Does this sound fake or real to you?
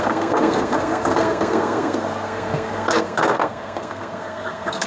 fake